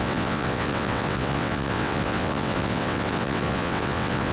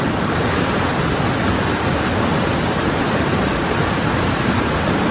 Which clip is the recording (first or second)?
second